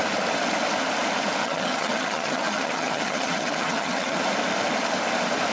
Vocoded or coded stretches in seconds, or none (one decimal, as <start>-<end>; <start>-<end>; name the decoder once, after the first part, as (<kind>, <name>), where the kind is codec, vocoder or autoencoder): 1.4-4.2 (vocoder, HiFi-GAN)